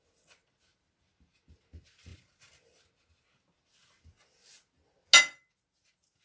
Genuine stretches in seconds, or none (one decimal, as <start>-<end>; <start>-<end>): 0.0-6.2